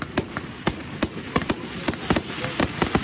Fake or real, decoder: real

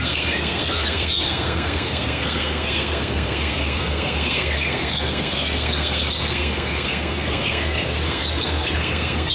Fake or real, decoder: fake, codec, SNAC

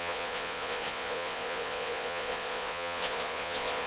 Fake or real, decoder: fake, vocoder, Vocos